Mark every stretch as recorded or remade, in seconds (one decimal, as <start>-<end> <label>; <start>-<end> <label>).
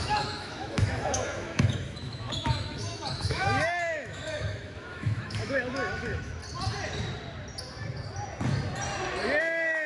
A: 0.0-6.4 remade; 6.4-9.4 recorded; 9.4-9.9 remade